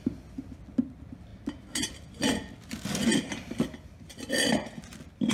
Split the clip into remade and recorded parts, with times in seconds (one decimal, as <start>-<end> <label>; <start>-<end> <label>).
0.0-5.3 recorded

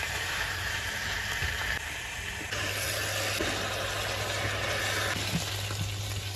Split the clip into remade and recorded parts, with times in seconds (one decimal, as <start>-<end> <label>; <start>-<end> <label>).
0.0-3.0 remade; 3.0-6.0 recorded; 6.0-6.4 remade

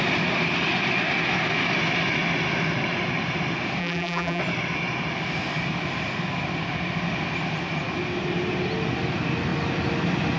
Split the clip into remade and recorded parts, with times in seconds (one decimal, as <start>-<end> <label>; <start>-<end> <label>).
0.0-3.8 recorded; 3.8-4.4 remade; 4.4-10.4 recorded

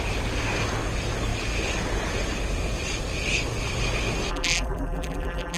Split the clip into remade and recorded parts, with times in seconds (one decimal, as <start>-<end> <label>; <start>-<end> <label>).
0.0-4.3 recorded; 4.3-5.6 remade

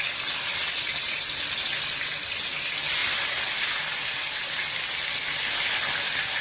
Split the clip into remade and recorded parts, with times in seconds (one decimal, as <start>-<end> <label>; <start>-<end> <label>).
0.0-6.4 recorded

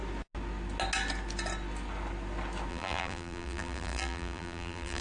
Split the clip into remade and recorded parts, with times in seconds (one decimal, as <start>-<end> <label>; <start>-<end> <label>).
0.0-2.7 recorded; 2.7-5.0 remade

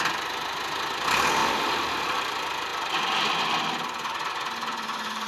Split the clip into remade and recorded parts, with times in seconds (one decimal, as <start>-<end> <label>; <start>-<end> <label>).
0.0-1.4 recorded; 1.4-2.3 remade; 2.3-5.3 recorded